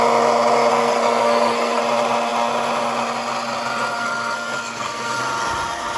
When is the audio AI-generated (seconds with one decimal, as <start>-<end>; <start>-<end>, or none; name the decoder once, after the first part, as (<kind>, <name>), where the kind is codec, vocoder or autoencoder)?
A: 0.7-1.8 (codec, SNAC); 3.9-5.2